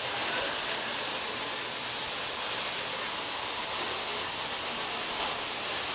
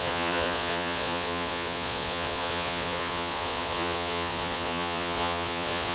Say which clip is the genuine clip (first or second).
first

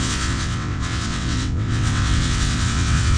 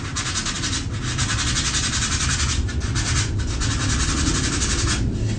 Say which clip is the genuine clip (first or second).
second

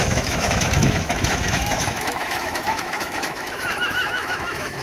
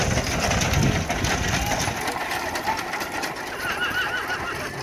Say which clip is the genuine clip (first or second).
second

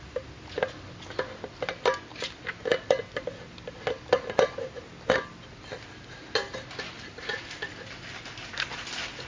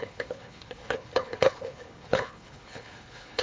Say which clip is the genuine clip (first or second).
first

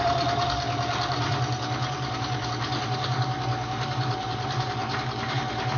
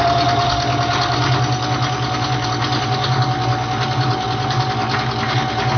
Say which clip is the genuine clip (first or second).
second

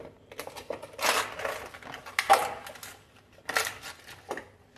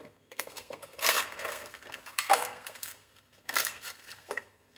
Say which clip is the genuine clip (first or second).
first